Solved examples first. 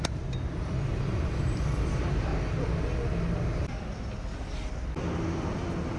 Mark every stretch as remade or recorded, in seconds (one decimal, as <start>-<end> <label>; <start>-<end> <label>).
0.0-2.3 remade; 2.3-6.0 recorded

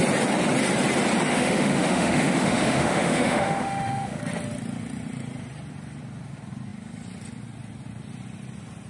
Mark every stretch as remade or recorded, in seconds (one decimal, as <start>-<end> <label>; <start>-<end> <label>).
0.0-1.3 recorded; 1.3-4.2 remade; 4.2-8.9 recorded

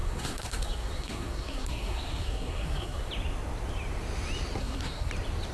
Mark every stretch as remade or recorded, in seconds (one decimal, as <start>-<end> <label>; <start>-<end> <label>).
0.0-3.1 remade; 3.1-4.6 recorded; 4.6-5.1 remade; 5.1-5.5 recorded

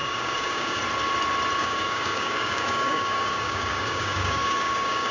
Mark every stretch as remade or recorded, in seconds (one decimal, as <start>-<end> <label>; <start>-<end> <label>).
0.0-0.8 remade; 0.8-1.6 recorded; 1.6-5.1 remade